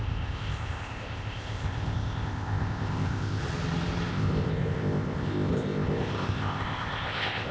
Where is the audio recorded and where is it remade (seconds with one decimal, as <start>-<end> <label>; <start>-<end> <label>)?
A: 0.0-3.4 remade; 3.4-4.1 recorded; 4.1-7.5 remade